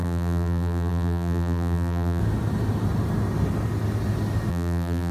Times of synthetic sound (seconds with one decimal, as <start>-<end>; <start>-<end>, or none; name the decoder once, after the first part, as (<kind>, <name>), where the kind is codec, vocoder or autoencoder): 0.0-2.2 (vocoder, BigVGAN v2); 4.5-5.1